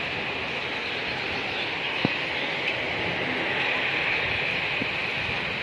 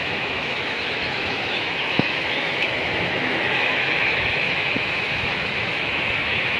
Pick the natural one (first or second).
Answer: first